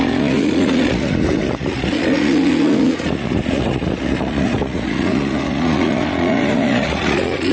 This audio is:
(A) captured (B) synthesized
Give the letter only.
B